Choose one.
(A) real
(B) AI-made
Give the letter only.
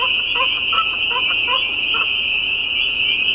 B